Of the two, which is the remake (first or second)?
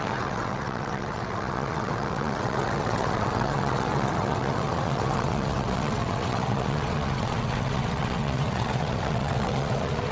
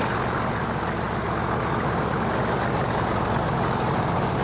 first